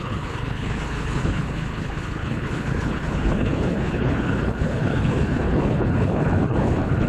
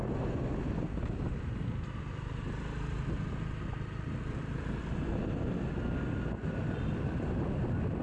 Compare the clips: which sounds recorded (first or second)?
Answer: second